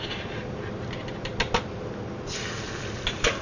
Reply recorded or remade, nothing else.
recorded